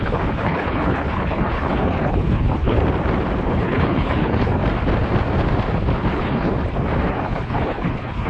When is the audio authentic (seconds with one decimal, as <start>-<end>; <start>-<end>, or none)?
2.8-3.4; 4.6-6.1; 6.5-7.1